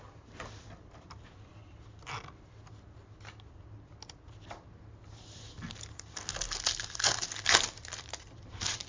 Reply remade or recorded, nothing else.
recorded